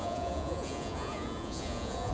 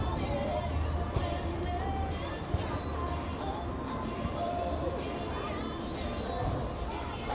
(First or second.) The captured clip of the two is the second